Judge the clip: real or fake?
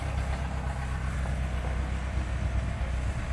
real